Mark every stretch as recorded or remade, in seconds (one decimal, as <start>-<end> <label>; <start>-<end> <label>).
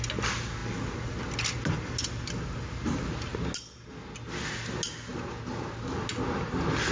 0.0-6.9 recorded